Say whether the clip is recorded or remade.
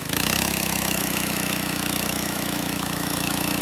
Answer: remade